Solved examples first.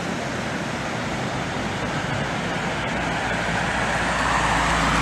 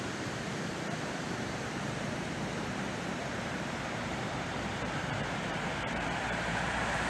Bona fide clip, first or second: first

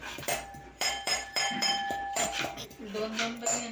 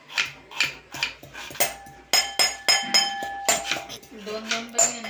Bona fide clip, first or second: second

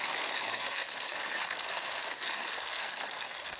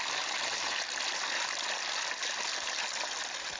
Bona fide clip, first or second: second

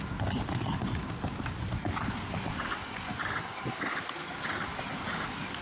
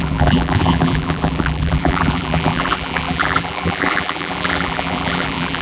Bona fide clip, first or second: first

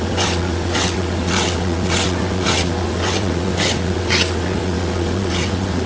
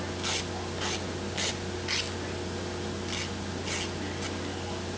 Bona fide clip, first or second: second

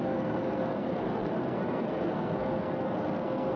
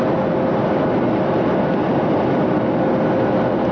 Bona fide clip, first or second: second